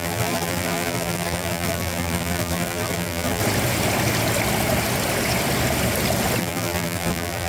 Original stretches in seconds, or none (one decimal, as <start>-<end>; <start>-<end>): 3.4-6.4